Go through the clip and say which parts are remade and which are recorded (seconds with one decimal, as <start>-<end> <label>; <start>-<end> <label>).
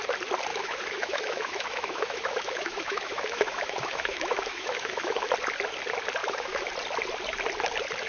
0.0-0.5 recorded; 0.5-5.3 remade; 5.3-6.2 recorded; 6.2-6.7 remade; 6.7-8.1 recorded